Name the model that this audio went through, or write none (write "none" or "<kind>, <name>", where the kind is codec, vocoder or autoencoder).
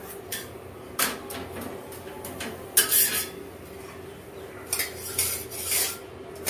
none